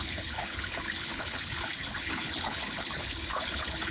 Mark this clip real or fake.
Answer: fake